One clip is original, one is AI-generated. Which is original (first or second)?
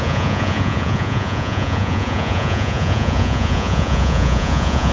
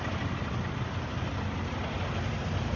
second